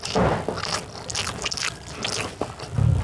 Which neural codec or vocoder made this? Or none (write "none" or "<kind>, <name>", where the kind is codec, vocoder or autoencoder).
none